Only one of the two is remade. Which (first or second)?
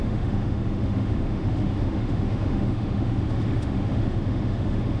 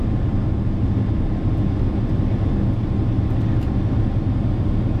first